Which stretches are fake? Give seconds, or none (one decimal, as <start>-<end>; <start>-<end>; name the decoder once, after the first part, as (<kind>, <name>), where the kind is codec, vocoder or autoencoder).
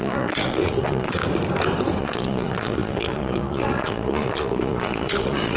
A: 0.0-1.2 (vocoder, Vocos); 2.0-5.6